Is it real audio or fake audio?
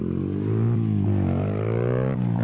real